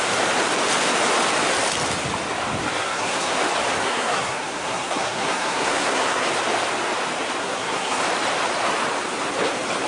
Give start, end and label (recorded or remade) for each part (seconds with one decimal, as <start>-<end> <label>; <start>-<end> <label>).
0.0-2.8 recorded; 2.8-3.4 remade; 3.4-3.8 recorded; 3.8-6.3 remade; 6.3-7.4 recorded; 7.4-8.0 remade; 8.0-9.9 recorded

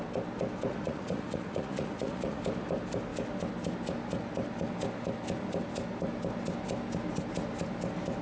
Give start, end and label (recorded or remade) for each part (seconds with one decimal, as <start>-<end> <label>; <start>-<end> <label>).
0.0-0.7 recorded; 0.7-2.4 remade; 2.4-8.2 recorded

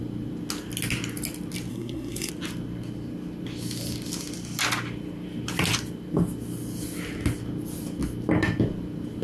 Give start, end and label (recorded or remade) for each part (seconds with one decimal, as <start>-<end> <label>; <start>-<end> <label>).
0.0-1.7 recorded; 1.7-2.3 remade; 2.3-9.2 recorded

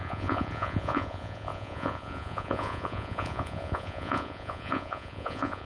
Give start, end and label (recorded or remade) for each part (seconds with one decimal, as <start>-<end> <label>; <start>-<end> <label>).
0.0-5.7 remade

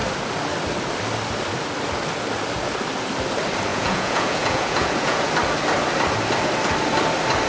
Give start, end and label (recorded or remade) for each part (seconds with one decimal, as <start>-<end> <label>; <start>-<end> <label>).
0.0-3.7 recorded; 3.7-5.3 remade; 5.3-7.5 recorded

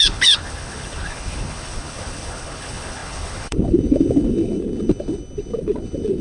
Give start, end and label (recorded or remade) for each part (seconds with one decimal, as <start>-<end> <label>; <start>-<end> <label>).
0.0-6.2 remade